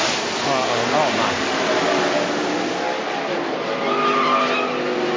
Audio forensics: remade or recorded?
recorded